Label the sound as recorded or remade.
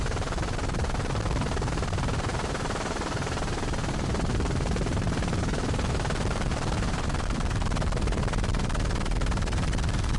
remade